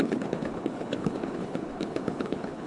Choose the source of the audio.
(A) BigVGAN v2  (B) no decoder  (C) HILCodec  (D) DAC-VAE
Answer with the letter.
C